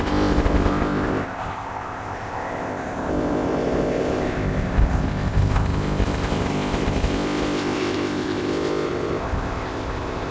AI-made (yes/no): yes